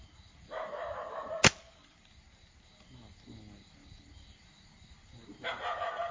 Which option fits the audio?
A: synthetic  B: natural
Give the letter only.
B